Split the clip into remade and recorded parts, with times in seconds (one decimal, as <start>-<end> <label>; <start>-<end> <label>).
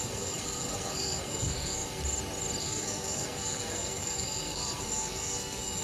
0.0-2.0 remade; 2.0-2.6 recorded; 2.6-5.8 remade